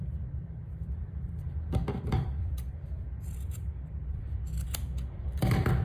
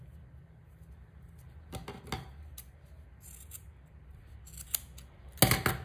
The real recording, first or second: second